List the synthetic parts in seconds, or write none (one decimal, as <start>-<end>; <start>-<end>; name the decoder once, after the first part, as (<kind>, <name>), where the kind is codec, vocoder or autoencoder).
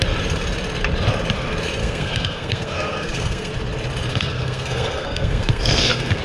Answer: 1.8-3.5 (codec, SNAC); 4.1-6.2